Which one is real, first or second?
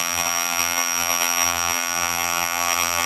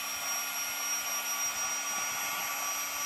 second